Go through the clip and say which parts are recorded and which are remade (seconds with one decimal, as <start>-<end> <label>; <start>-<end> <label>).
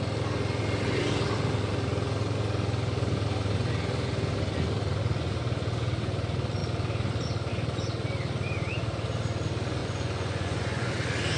0.0-9.8 recorded; 9.8-10.9 remade; 10.9-11.4 recorded